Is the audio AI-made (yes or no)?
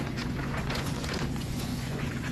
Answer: yes